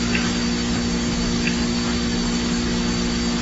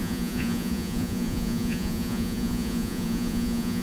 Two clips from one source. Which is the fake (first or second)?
second